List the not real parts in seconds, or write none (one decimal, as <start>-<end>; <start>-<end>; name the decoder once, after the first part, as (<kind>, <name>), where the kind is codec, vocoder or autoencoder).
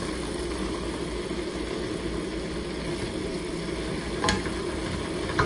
none